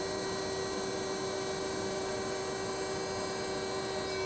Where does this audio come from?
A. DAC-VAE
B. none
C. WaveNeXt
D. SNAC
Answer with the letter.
B